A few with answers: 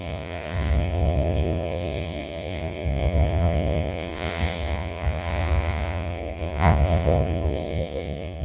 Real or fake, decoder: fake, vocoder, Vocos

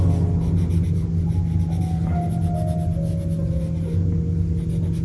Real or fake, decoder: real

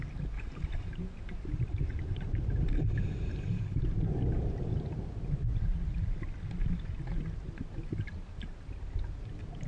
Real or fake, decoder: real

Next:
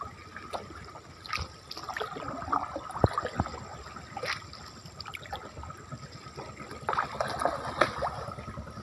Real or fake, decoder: real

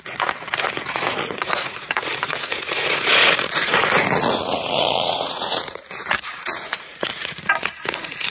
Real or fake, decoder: fake, vocoder, Vocos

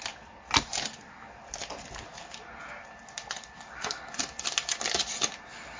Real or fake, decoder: real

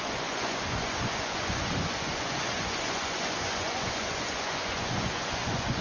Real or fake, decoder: fake, vocoder, Vocos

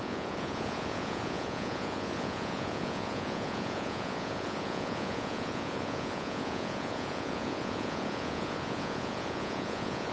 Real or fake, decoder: fake, vocoder, Vocos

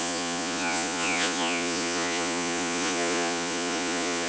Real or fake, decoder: fake, vocoder, Vocos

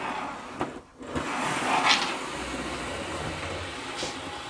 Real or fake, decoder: real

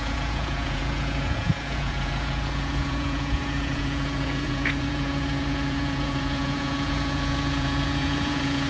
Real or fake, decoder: fake, vocoder, Vocos